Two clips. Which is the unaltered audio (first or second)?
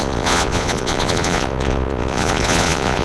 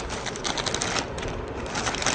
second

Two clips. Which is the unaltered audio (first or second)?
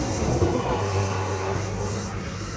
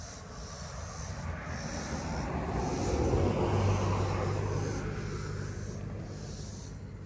second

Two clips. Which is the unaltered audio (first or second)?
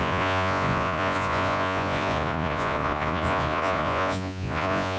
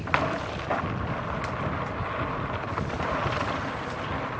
second